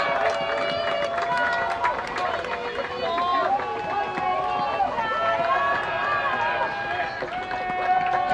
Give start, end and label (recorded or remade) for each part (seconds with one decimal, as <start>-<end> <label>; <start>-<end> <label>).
0.0-8.3 recorded